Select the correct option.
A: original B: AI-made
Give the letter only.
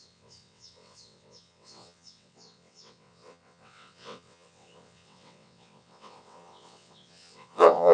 B